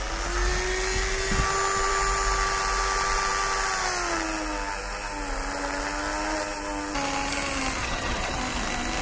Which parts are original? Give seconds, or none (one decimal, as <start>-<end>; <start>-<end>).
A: 0.0-7.8; 8.4-9.0